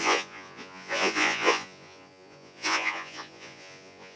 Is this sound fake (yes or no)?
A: yes